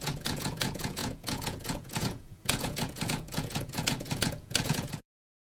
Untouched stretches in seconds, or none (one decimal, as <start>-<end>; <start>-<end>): none